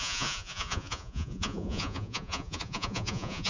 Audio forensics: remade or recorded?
remade